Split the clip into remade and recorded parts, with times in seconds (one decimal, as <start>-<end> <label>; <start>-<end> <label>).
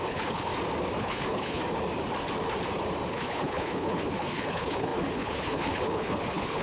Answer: 0.0-0.5 remade; 0.5-1.0 recorded; 1.0-1.6 remade; 1.6-3.1 recorded; 3.1-6.6 remade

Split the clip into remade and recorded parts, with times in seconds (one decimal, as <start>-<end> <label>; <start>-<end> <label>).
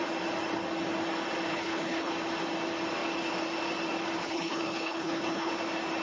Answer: 0.0-1.5 recorded; 1.5-2.1 remade; 2.1-4.2 recorded; 4.2-5.5 remade; 5.5-6.0 recorded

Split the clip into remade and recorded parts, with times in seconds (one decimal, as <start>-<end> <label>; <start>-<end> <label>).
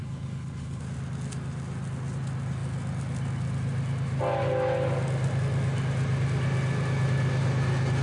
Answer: 0.0-0.8 remade; 0.8-8.0 recorded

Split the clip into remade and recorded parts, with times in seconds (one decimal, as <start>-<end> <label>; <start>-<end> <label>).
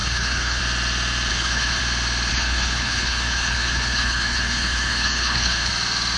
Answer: 0.0-0.6 remade; 0.6-1.3 recorded; 1.3-1.8 remade; 1.8-2.3 recorded; 2.3-5.7 remade; 5.7-6.2 recorded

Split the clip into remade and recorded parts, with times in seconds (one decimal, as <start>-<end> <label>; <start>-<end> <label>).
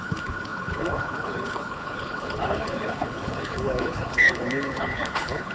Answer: 0.0-5.5 remade